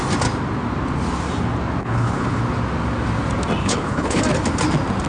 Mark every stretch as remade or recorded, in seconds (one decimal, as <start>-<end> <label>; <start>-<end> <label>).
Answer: 0.0-1.8 recorded; 1.8-2.4 remade; 2.4-3.6 recorded; 3.6-4.2 remade; 4.2-5.1 recorded